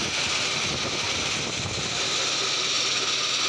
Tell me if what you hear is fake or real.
real